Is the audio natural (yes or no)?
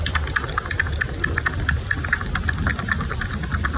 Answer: yes